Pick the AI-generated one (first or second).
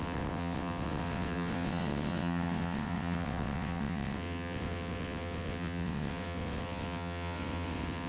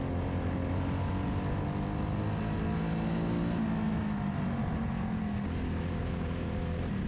first